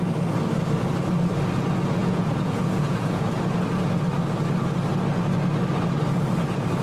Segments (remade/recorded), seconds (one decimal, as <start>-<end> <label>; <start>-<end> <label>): 0.0-2.0 recorded; 2.0-3.3 remade; 3.3-6.8 recorded